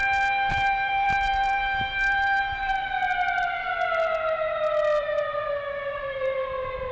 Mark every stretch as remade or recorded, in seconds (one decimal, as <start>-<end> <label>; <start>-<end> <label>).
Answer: 0.0-2.8 remade; 2.8-5.0 recorded; 5.0-6.9 remade